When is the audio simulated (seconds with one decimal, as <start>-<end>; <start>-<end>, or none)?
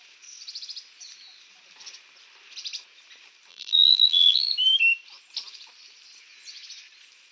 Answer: 3.5-4.5